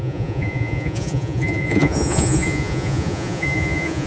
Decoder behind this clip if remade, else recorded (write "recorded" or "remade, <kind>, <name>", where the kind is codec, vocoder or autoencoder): remade, vocoder, Vocos